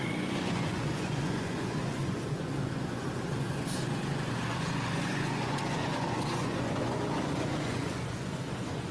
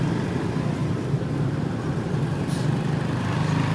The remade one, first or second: first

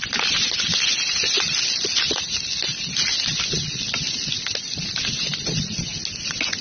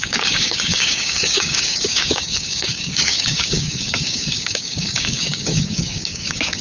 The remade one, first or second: second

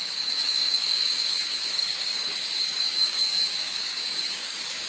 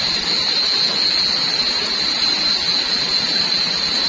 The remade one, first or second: first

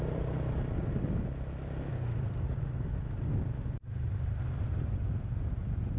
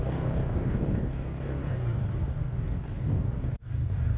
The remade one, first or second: second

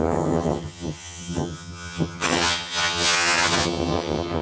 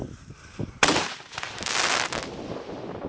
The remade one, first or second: first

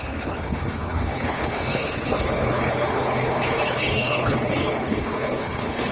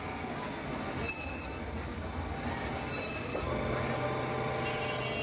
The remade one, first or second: first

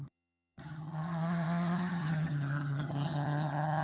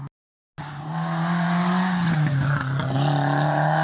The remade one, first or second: first